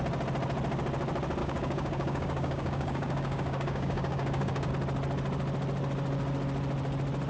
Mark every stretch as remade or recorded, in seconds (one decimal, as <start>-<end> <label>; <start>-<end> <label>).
0.0-1.4 recorded; 1.4-4.7 remade; 4.7-7.3 recorded